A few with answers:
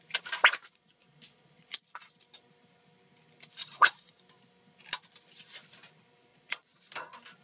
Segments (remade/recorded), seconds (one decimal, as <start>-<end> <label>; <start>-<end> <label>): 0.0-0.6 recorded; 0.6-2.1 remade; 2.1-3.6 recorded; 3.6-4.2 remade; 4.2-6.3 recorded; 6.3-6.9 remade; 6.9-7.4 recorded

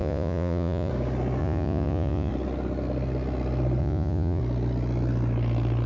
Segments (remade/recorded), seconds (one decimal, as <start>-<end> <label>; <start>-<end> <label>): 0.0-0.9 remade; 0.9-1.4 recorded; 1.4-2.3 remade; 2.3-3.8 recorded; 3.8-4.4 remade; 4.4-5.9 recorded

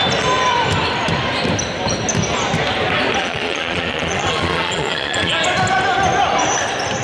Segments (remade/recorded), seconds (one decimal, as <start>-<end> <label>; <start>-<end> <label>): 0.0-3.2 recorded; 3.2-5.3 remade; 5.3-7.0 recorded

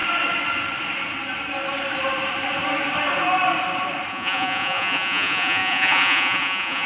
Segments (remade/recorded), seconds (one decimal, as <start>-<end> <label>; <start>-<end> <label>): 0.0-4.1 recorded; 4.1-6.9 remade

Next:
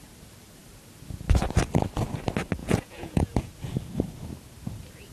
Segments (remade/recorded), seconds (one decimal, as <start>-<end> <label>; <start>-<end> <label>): 0.0-2.6 recorded; 2.6-3.5 remade; 3.5-5.1 recorded

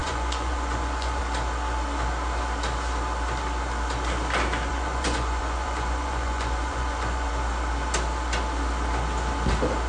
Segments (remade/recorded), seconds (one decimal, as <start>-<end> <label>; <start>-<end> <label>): 0.0-1.2 remade; 1.2-4.7 recorded; 4.7-7.3 remade; 7.3-9.9 recorded

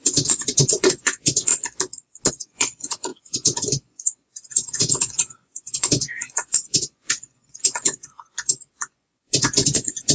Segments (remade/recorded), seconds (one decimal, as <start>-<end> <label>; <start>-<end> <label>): 0.0-1.5 remade; 1.5-2.3 recorded; 2.3-10.1 remade